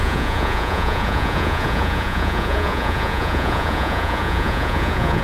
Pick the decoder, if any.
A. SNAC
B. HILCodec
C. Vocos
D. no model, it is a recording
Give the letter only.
C